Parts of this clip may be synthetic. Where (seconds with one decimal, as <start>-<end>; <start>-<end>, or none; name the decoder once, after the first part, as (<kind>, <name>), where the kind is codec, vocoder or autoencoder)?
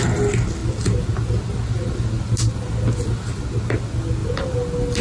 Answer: none